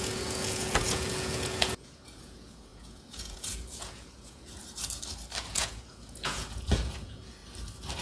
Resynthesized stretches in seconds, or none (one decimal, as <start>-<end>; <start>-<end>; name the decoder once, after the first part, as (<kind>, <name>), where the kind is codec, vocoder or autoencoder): 0.0-4.6 (vocoder, Vocos); 5.5-7.4